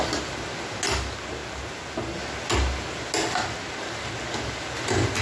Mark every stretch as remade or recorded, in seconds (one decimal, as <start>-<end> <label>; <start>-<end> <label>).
0.0-5.2 recorded